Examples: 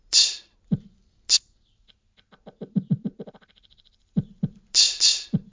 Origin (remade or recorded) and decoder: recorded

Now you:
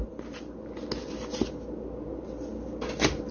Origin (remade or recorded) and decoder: recorded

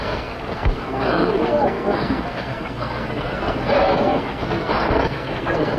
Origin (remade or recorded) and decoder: remade, codec, SNAC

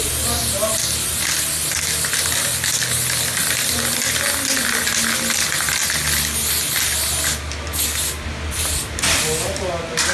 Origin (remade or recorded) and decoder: recorded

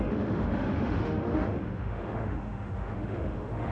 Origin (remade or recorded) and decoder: remade, autoencoder, DAC-VAE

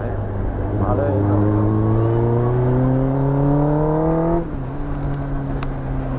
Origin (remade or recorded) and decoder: recorded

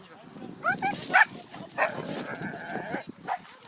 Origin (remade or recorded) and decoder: recorded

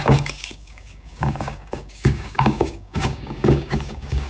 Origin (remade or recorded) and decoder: remade, codec, DAC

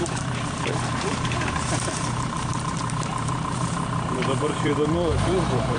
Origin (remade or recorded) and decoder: remade, vocoder, BigVGAN v2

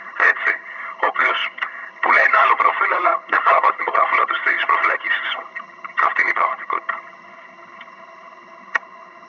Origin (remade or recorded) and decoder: remade, vocoder, HiFi-GAN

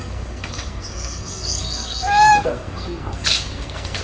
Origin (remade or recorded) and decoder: remade, codec, SNAC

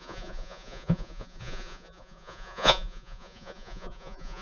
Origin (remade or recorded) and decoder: remade, vocoder, Vocos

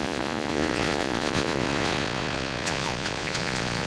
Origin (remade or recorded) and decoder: remade, vocoder, Vocos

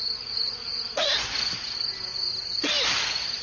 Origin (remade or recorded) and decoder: recorded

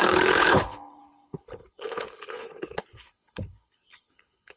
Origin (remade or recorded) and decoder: remade, codec, HILCodec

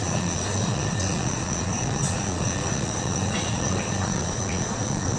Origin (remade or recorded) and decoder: remade, vocoder, Vocos